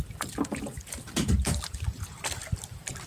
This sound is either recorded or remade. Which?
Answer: recorded